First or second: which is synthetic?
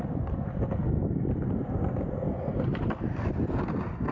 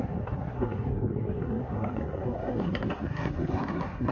second